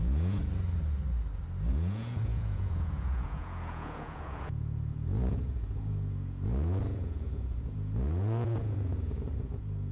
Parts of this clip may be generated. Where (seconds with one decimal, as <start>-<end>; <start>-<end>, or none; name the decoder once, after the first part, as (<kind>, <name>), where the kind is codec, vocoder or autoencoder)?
0.0-0.4 (vocoder, Vocos); 1.7-9.9

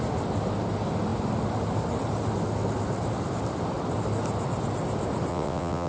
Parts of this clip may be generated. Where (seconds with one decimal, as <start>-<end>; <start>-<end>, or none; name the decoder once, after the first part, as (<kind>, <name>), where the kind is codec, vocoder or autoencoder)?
5.3-5.9 (vocoder, WaveNeXt)

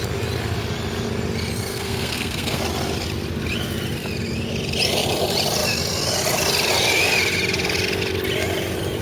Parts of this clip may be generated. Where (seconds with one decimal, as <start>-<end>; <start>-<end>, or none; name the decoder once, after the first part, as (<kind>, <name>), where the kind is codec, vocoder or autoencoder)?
1.7-2.6 (codec, SNAC)

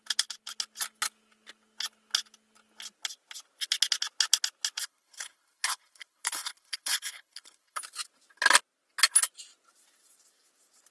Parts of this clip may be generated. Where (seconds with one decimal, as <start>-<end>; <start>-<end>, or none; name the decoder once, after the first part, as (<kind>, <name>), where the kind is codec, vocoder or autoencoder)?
4.8-7.8 (codec, HILCodec)